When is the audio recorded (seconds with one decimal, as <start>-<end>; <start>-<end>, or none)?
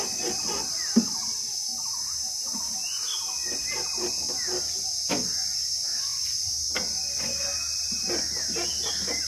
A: 0.0-9.3